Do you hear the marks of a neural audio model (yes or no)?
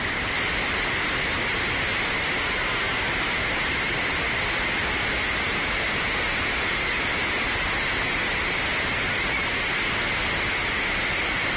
no